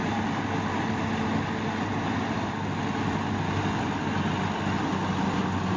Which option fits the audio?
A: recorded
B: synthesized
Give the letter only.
A